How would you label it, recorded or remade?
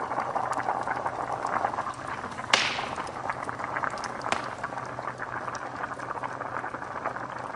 recorded